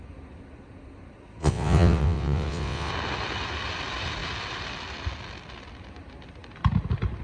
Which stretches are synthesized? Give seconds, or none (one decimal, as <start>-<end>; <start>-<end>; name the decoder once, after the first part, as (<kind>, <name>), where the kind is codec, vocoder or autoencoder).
1.4-2.9 (vocoder, WaveNeXt)